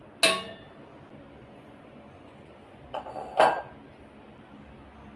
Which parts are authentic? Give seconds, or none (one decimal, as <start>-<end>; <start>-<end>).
0.0-1.4; 3.3-5.2